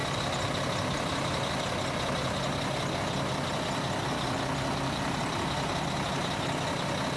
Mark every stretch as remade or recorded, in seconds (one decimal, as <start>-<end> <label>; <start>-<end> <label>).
0.0-7.2 recorded